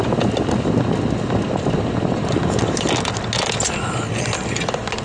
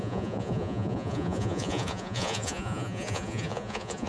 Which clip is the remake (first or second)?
second